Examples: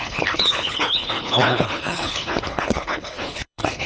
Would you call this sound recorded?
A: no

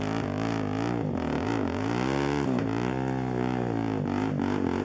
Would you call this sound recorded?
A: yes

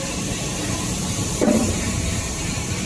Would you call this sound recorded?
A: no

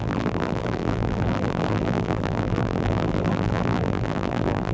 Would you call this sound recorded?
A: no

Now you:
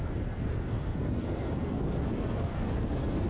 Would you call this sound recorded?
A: no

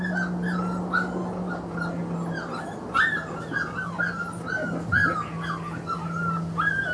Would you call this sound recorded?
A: yes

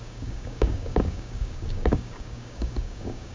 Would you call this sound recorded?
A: no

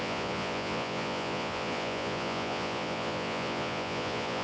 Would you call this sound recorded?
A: no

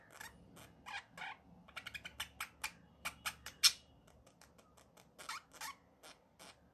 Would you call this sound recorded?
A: yes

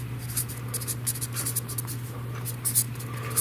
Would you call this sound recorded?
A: yes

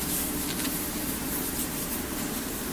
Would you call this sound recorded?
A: no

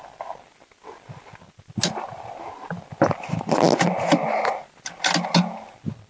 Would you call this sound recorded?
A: yes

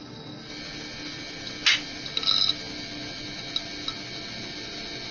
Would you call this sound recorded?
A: yes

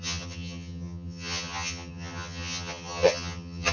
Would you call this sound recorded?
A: no